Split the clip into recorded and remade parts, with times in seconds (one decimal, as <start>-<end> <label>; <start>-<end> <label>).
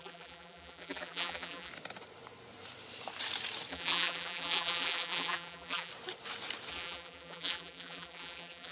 0.0-1.7 remade; 1.7-3.7 recorded; 3.7-5.9 remade; 5.9-6.7 recorded; 6.7-8.7 remade